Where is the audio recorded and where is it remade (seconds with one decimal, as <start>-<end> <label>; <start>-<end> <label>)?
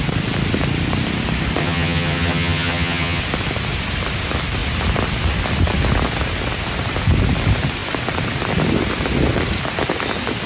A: 0.0-1.6 recorded; 1.6-3.2 remade; 3.2-10.5 recorded